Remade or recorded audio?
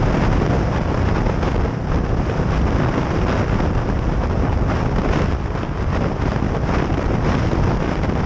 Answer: recorded